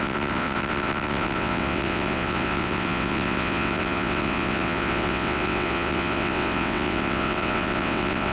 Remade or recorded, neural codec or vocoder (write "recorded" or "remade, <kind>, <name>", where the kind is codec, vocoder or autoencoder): remade, vocoder, WaveNeXt